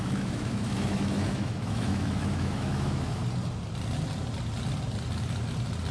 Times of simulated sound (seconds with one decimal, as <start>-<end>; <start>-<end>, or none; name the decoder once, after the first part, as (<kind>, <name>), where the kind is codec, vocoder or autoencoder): 0.0-3.2 (autoencoder, DAC-VAE)